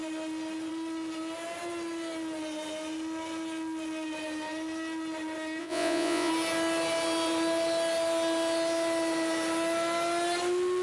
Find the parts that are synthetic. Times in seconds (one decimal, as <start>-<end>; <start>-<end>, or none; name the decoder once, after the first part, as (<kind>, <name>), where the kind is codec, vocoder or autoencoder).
5.6-6.3 (vocoder, Vocos)